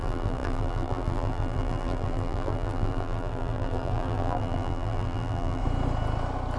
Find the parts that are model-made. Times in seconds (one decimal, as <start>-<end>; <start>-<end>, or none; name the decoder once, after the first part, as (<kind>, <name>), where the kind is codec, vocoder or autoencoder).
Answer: 0.0-5.6 (vocoder, BigVGAN v2)